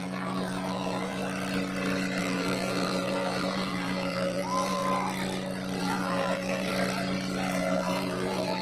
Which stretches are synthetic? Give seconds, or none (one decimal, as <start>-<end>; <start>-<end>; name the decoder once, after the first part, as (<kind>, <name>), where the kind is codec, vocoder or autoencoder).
0.0-1.2 (vocoder, BigVGAN v2); 2.2-4.8; 5.8-6.7; 7.5-8.6